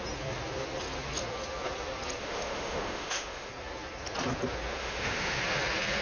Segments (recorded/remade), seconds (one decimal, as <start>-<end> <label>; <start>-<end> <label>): 0.0-2.2 recorded; 2.2-3.5 remade; 3.5-4.8 recorded; 4.8-5.4 remade; 5.4-6.0 recorded